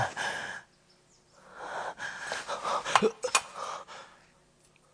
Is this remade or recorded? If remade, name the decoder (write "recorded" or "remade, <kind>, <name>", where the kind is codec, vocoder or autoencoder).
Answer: recorded